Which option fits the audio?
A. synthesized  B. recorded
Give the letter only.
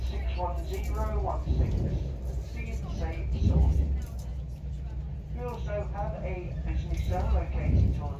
B